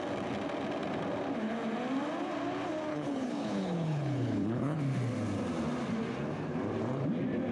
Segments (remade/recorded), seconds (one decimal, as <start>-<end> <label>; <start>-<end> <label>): 0.0-2.9 recorded; 2.9-4.8 remade; 4.8-7.5 recorded